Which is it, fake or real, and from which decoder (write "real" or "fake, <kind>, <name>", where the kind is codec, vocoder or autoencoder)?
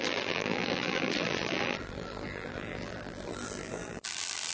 fake, vocoder, BigVGAN v2